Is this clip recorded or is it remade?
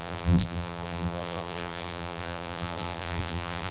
remade